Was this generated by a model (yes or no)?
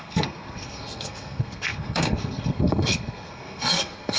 yes